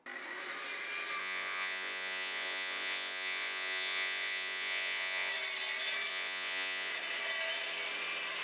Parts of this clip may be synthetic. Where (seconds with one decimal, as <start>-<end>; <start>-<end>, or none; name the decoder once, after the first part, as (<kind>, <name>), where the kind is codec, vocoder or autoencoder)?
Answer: 1.2-5.3 (vocoder, Vocos); 6.1-6.9